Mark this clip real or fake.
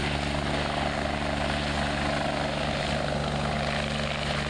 real